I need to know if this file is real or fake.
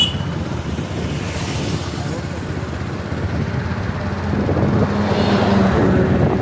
real